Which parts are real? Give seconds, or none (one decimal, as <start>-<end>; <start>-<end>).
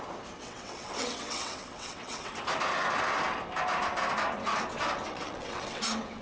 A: 0.0-0.4; 2.3-5.1; 5.8-6.2